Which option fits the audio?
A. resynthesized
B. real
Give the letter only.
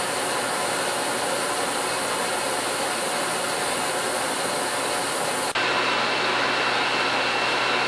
B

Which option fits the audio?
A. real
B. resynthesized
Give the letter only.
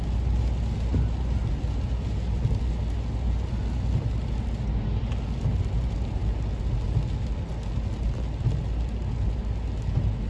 A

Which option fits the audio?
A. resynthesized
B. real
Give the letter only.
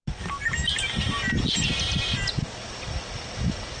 B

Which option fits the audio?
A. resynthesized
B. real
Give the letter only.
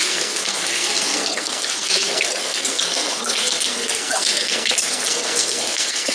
A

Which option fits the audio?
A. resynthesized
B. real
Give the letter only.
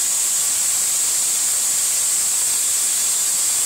B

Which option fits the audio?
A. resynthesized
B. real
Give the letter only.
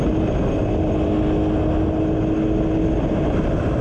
B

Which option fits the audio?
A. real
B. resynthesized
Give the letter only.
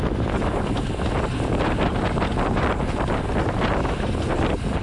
A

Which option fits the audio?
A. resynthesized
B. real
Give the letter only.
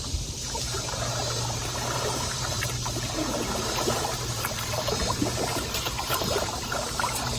A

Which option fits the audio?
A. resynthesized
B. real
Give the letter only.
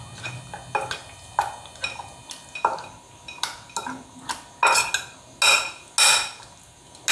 B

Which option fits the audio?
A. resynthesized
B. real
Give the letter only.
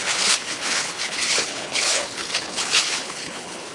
A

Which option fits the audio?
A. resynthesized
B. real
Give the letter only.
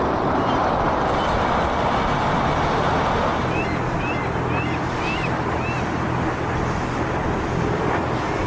B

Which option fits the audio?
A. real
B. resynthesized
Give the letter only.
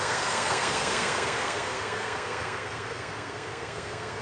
B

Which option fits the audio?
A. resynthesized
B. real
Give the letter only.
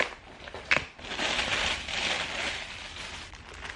B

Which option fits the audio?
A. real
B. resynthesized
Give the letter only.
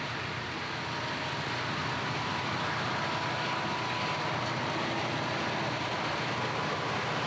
A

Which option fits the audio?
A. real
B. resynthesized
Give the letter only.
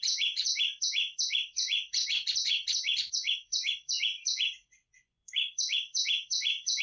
B